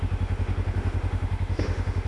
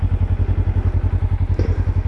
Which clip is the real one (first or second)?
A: second